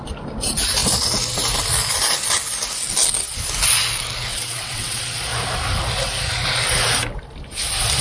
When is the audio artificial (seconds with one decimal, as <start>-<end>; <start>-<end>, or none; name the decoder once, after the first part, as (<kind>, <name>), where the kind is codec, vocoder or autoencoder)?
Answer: 4.3-5.0 (vocoder, WaveNeXt)